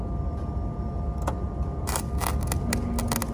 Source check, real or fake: real